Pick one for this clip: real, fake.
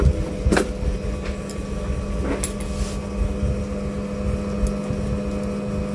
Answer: real